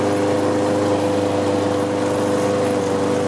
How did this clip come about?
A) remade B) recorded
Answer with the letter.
B